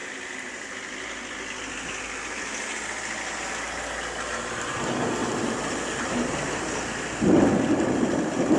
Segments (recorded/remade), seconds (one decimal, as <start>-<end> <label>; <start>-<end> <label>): 0.0-8.6 recorded